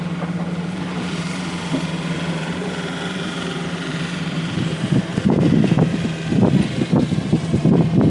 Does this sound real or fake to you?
fake